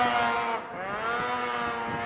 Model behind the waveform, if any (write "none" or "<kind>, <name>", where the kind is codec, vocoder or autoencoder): none